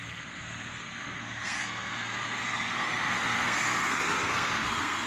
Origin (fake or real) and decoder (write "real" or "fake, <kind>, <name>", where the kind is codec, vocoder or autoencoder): fake, codec, SNAC